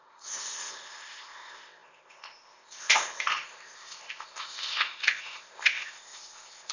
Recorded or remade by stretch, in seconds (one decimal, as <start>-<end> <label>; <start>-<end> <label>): 0.0-6.7 remade

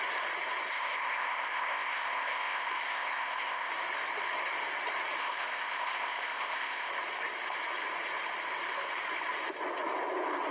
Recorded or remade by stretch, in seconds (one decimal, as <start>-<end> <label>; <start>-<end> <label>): 0.0-0.7 recorded; 0.7-3.7 remade; 3.7-5.2 recorded; 5.2-6.9 remade; 6.9-10.5 recorded

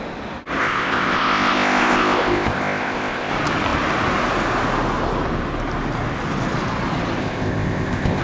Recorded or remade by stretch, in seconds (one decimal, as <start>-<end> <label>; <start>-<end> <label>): 0.0-0.6 recorded; 0.6-3.3 remade; 3.3-7.2 recorded; 7.2-8.2 remade

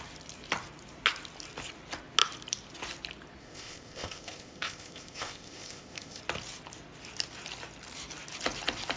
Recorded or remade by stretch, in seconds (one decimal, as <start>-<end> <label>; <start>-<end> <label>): 0.0-3.4 recorded; 3.4-6.2 remade; 6.2-9.0 recorded